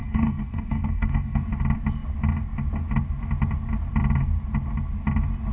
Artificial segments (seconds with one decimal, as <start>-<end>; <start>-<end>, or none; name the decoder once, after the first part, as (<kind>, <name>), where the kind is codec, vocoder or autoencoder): 0.0-1.5 (codec, SNAC)